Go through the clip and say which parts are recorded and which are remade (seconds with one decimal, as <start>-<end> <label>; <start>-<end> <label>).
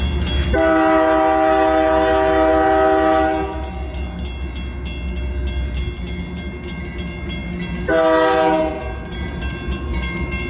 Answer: 0.0-10.5 recorded